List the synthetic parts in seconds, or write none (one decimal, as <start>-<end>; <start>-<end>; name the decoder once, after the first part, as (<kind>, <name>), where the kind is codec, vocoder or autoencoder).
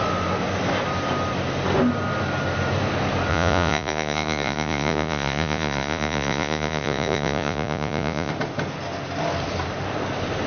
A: 3.3-8.3 (vocoder, Vocos)